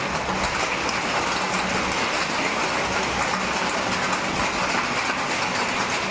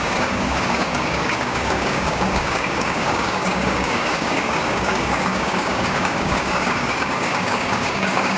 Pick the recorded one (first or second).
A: first